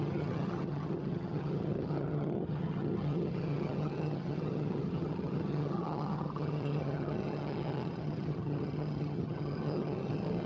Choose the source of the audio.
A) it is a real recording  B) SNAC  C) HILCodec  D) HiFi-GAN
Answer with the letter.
D